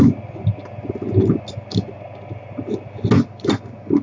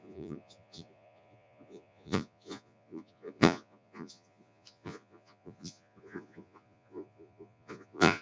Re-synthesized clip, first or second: second